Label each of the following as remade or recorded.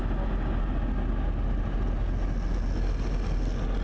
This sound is recorded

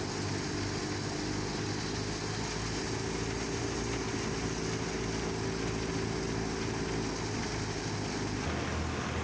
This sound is recorded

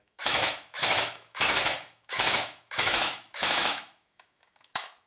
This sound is remade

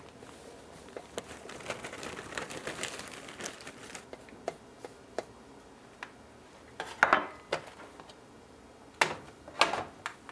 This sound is recorded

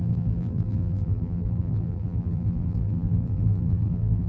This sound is remade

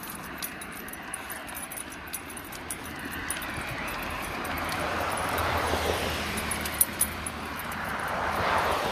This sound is remade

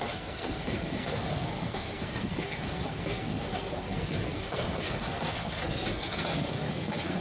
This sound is remade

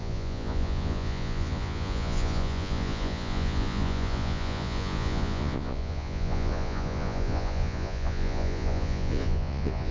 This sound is remade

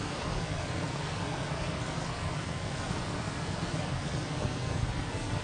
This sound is remade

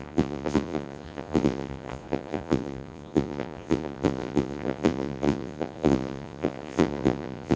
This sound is remade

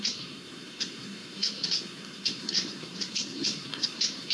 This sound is remade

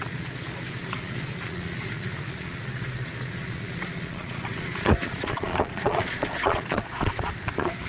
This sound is remade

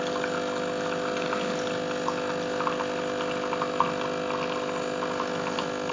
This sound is recorded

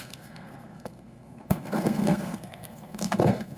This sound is remade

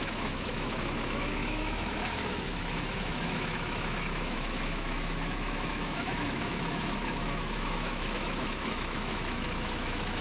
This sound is remade